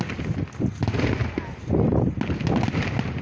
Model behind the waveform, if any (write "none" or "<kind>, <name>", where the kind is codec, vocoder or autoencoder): none